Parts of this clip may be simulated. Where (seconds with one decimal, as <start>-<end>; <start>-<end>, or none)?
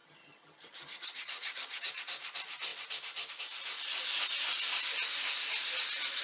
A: 0.0-1.9